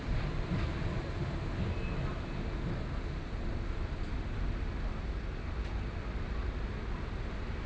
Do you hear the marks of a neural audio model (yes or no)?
no